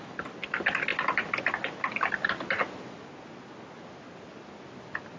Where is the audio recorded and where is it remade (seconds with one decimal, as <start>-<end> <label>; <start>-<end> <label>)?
0.0-5.2 recorded